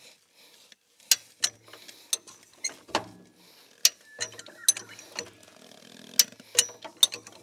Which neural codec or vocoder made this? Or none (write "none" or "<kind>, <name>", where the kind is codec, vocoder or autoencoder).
none